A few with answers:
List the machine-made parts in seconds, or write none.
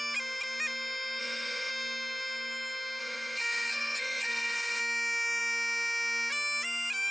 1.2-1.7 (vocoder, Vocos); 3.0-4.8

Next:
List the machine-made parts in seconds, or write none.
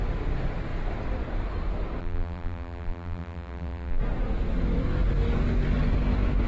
2.0-4.0 (vocoder, BigVGAN v2)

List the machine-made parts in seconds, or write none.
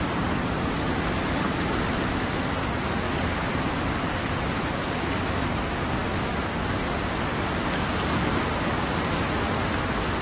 none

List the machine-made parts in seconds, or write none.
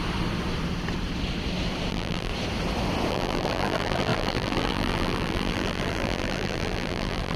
1.9-2.3 (vocoder, BigVGAN v2); 3.1-7.4